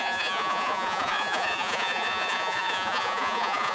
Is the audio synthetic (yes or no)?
yes